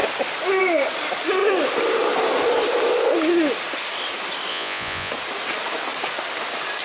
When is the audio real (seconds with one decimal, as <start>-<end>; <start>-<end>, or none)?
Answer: 0.0-4.5; 5.1-6.8